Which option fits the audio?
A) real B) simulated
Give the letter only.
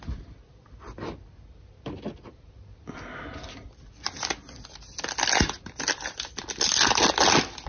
A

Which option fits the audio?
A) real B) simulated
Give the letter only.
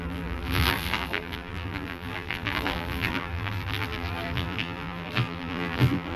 B